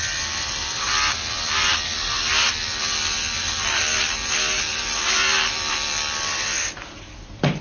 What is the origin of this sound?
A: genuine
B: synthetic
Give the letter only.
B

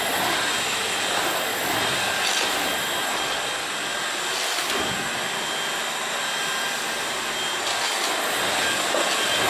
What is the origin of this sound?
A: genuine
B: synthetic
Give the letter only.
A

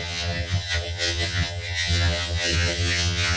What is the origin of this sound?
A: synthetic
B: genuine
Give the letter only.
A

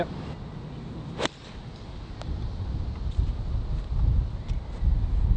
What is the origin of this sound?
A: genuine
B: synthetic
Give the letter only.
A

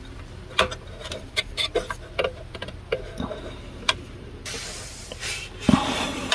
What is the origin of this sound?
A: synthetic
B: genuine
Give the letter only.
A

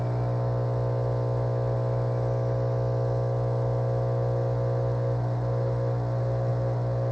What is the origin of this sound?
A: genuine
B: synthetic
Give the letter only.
A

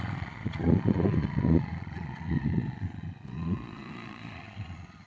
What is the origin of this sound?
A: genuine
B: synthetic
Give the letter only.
B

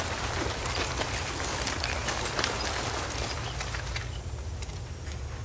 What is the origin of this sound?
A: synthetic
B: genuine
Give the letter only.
B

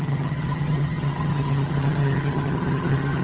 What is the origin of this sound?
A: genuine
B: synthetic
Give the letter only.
B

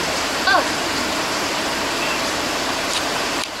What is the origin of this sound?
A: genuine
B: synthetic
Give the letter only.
B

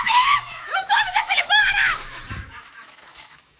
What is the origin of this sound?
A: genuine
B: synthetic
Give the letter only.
B